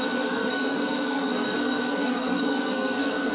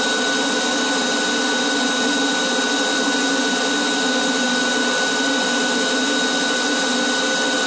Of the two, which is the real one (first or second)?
second